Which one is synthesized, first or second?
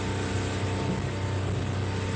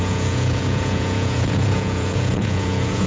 second